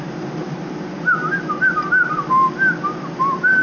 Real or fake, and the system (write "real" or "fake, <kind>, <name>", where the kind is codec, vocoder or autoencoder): real